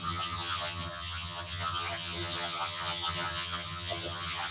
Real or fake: fake